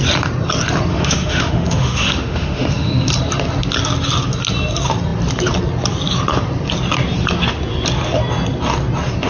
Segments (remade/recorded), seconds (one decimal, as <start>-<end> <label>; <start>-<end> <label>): 0.0-0.9 recorded; 0.9-3.1 remade; 3.1-9.3 recorded